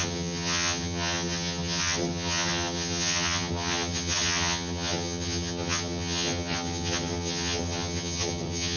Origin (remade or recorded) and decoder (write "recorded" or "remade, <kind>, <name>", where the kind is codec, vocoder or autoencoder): remade, vocoder, HiFi-GAN